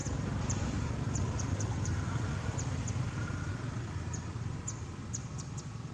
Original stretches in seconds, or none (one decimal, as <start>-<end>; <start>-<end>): 3.5-5.9